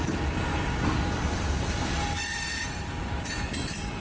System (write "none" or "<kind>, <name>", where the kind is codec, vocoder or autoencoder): none